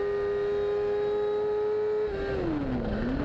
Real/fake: real